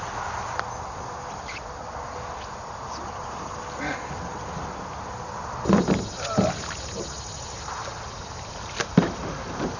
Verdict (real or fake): real